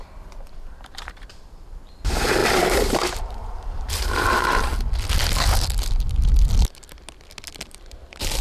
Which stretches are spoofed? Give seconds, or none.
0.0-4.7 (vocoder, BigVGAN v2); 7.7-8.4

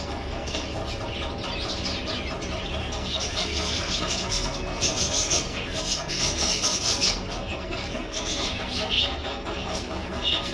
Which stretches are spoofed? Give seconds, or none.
0.0-0.8 (codec, SNAC); 2.8-10.5

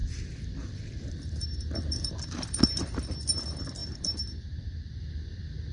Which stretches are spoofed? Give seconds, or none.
0.0-5.7 (vocoder, BigVGAN v2)

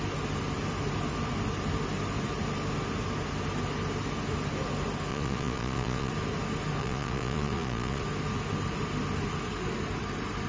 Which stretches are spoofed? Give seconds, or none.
5.1-6.1 (vocoder, Vocos); 6.8-8.0

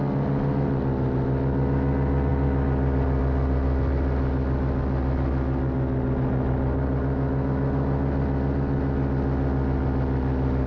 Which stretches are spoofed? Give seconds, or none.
none